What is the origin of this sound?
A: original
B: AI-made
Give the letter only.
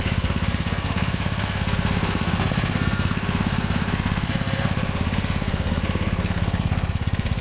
B